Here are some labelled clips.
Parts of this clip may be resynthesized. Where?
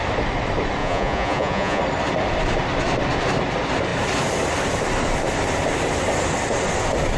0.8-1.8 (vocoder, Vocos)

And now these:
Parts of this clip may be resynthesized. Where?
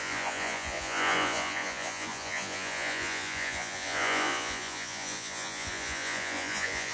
0.0-6.9 (vocoder, Vocos)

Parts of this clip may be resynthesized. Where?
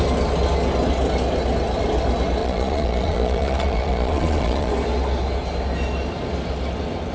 2.4-4.7 (vocoder, Vocos)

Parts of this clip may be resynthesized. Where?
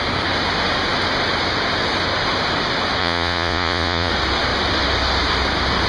3.0-4.1 (vocoder, Vocos)